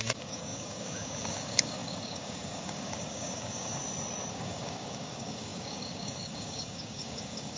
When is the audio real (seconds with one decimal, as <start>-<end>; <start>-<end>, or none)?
3.8-4.3